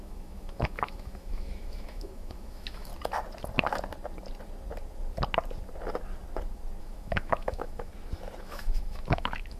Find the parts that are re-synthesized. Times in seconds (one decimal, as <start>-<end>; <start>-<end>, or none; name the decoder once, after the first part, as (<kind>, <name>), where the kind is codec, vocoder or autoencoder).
0.0-2.9 (autoencoder, DAC-VAE); 6.8-7.9; 8.4-9.6